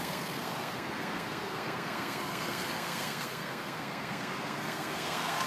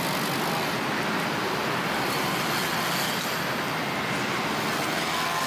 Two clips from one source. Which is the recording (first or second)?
second